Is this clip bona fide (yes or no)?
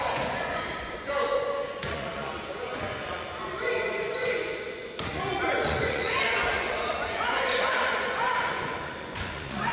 no